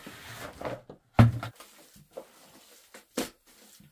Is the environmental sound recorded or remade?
recorded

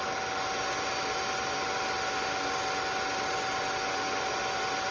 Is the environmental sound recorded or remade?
recorded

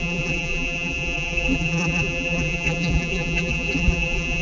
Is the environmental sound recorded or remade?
remade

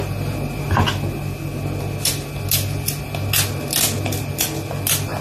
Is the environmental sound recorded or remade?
recorded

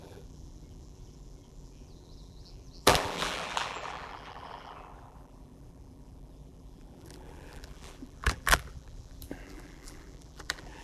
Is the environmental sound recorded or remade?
remade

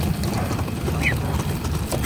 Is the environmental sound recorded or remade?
remade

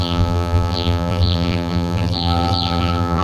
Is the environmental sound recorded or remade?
remade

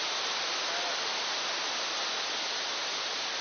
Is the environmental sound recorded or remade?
recorded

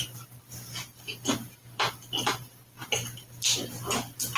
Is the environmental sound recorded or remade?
recorded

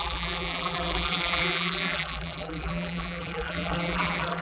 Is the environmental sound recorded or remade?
remade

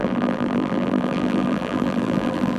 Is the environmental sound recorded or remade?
remade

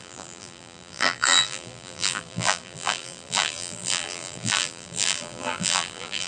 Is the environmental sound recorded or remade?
remade